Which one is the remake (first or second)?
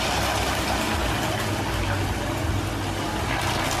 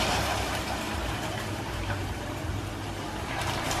second